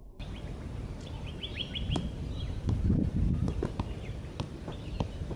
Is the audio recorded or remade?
remade